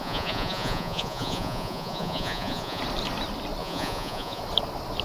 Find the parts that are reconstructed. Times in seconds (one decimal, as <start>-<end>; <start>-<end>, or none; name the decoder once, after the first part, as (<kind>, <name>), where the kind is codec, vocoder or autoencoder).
0.0-2.8 (vocoder, Vocos); 3.6-4.4